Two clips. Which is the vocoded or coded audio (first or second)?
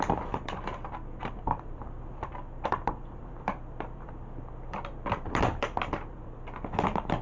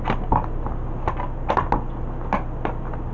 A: first